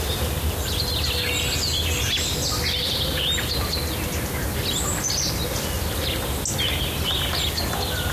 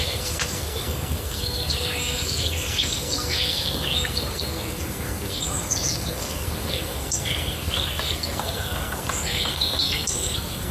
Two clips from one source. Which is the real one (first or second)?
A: first